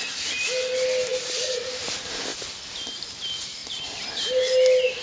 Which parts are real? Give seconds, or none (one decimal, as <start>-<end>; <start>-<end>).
0.0-1.1; 1.9-3.6; 4.1-5.0